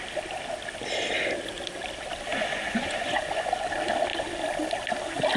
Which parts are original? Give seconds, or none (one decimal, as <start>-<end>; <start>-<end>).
0.0-2.3; 3.5-5.4